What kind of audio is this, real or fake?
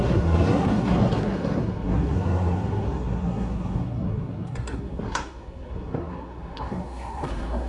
fake